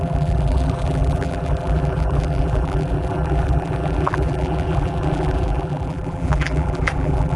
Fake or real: fake